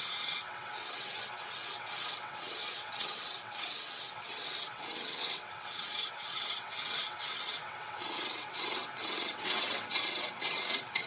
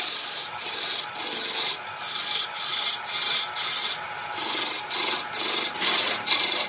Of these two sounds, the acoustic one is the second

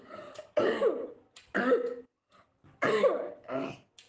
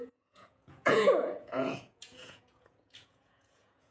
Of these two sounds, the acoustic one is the first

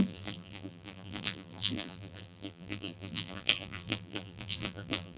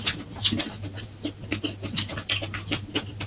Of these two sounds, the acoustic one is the second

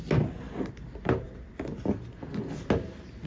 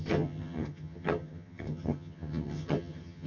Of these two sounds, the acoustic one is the first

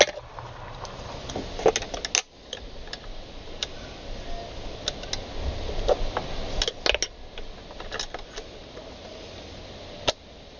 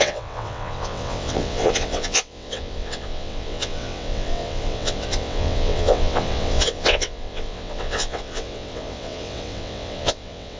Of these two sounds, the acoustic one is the first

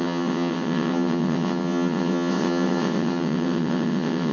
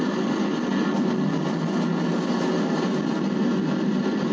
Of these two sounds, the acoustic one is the second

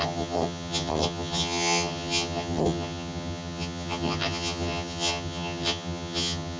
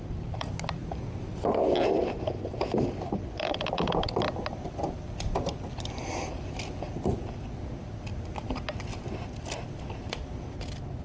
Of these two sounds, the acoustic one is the second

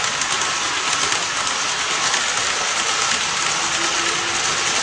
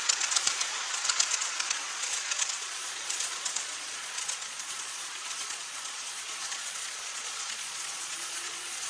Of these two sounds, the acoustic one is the first